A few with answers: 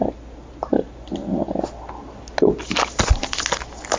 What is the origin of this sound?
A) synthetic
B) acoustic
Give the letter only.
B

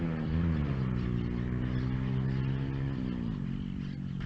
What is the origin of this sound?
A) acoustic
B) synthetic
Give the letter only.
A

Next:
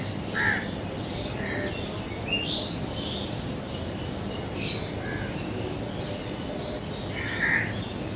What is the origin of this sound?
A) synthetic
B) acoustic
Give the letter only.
B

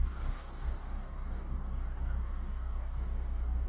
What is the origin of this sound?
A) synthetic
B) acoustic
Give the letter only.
A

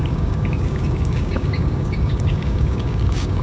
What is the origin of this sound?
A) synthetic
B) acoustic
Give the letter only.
A